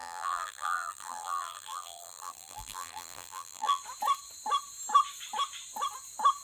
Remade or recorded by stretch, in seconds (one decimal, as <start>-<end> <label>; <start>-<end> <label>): 0.0-3.8 remade; 3.8-6.4 recorded